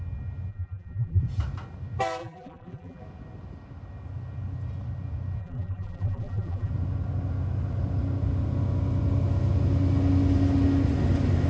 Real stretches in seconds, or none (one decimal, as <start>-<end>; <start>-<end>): 0.0-0.5; 1.2-2.2; 3.0-5.4; 6.7-11.5